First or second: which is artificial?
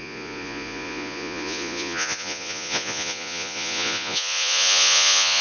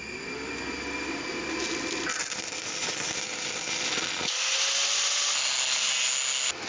first